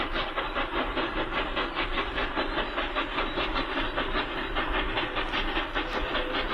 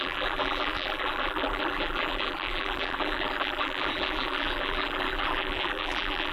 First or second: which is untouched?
first